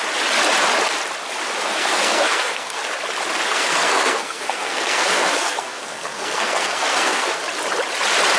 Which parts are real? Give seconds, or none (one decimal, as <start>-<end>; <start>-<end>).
0.0-1.6; 2.9-3.5; 7.4-8.4